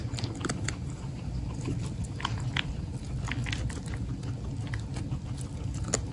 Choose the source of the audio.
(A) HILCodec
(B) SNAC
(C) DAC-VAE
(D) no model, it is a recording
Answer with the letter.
D